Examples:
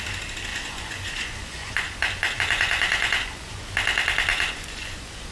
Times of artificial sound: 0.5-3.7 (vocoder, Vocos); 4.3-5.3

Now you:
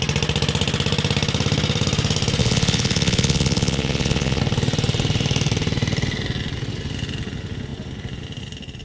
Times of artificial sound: 2.4-4.4 (vocoder, Vocos)

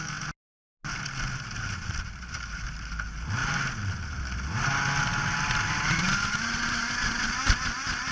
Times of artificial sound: none